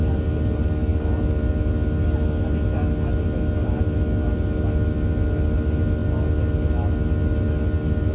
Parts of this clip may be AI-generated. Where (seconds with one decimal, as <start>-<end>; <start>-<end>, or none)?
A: none